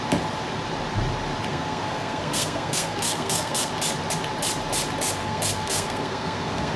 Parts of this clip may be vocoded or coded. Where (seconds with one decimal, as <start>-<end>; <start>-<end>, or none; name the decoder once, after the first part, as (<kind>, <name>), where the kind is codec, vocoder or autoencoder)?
1.5-3.7 (codec, SNAC); 5.2-6.8